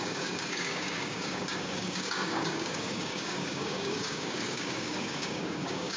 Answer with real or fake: fake